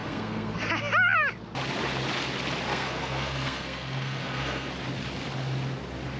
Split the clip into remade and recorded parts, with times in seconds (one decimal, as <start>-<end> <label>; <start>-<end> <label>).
0.0-0.7 remade; 0.7-2.7 recorded; 2.7-4.7 remade; 4.7-6.2 recorded